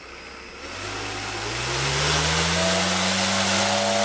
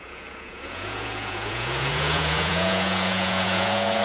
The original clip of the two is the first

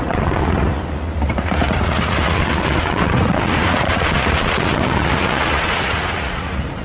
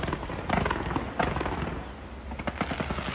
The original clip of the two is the second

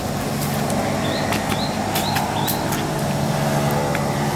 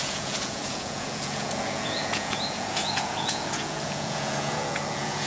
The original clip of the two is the first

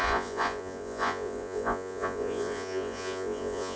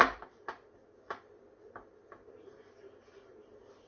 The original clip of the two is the second